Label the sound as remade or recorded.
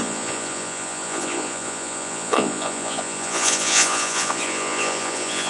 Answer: remade